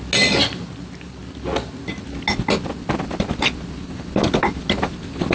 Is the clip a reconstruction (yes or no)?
no